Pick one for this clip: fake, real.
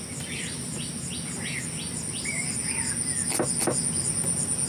real